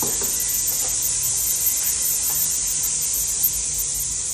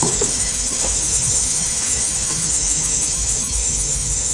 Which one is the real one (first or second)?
first